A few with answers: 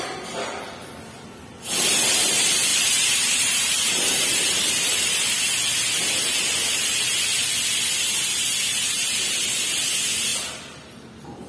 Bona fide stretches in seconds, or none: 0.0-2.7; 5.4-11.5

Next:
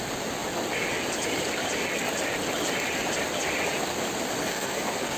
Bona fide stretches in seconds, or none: 0.0-4.4